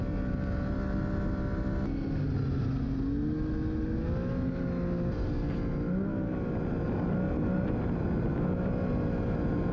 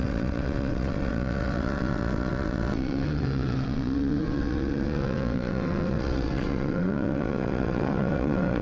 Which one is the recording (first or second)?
first